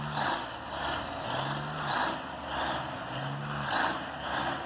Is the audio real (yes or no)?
yes